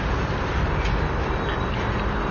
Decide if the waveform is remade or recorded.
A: recorded